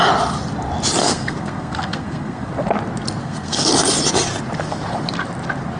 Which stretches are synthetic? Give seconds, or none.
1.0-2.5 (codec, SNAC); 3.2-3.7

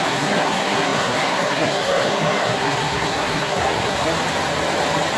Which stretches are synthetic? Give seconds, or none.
0.0-4.1 (codec, SNAC)

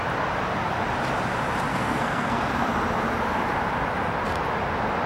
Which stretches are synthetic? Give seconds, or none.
1.7-2.5 (codec, SNAC)